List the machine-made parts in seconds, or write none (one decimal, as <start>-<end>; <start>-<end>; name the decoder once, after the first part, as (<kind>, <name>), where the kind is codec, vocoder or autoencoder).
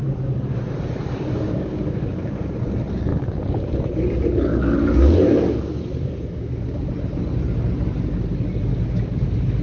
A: 0.0-2.5 (codec, DAC); 3.1-6.9; 8.7-9.6